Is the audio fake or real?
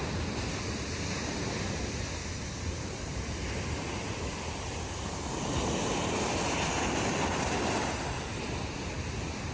real